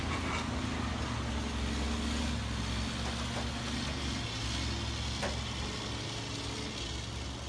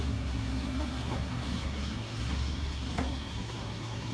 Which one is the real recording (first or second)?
first